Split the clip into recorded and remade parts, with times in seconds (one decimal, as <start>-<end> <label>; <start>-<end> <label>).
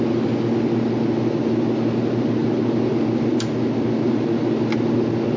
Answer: 0.0-5.4 recorded